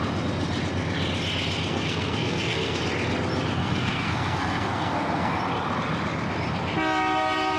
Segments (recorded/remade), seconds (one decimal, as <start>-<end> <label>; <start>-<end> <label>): 0.0-1.7 recorded; 1.7-2.8 remade; 2.8-3.6 recorded; 3.6-5.4 remade; 5.4-7.6 recorded